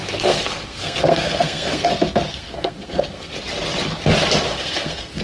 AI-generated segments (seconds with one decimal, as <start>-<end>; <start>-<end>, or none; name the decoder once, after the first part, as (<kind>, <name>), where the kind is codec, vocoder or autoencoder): 0.0-1.9 (codec, SNAC); 2.3-3.4; 4.5-5.2